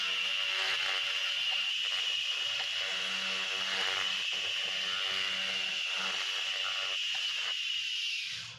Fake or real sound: real